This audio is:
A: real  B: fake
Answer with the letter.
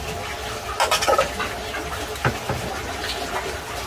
A